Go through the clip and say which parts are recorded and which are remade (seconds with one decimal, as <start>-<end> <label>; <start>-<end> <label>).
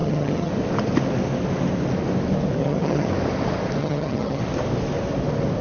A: 0.0-0.5 remade; 0.5-2.6 recorded; 2.6-3.1 remade; 3.1-3.8 recorded; 3.8-4.4 remade; 4.4-5.6 recorded